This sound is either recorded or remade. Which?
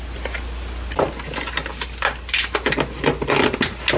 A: recorded